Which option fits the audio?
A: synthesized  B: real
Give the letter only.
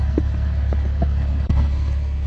A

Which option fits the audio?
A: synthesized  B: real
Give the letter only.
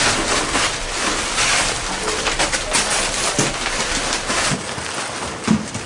B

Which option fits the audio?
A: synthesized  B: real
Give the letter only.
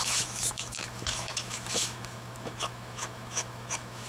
A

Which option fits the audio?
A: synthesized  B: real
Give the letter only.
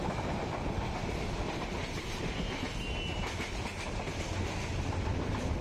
B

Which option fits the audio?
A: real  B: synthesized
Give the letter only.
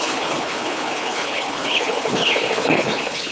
B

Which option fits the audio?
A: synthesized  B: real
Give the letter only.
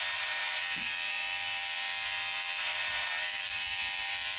A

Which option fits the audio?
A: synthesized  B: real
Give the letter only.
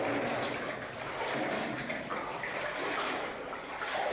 B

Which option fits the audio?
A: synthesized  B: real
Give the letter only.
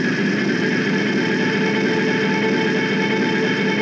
B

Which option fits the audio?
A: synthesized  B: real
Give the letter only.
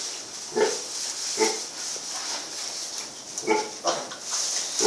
B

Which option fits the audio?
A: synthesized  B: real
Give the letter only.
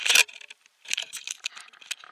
B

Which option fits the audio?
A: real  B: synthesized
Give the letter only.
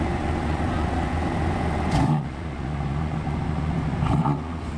B